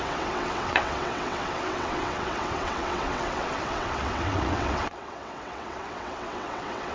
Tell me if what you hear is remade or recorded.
remade